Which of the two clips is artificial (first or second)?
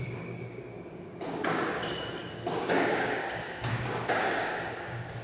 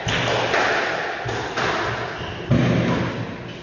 first